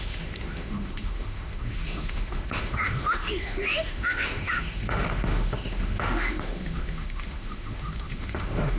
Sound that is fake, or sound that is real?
fake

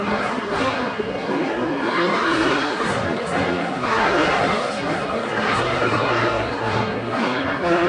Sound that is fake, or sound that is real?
fake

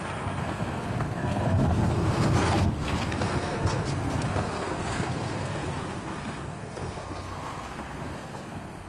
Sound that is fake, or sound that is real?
fake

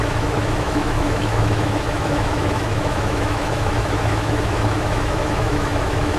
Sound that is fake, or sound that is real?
fake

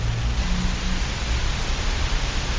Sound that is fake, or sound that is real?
real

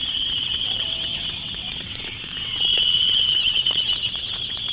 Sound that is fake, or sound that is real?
fake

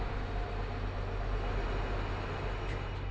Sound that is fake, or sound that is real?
real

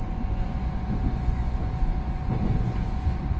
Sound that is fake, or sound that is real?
fake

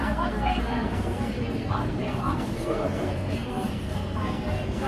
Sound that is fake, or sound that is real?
fake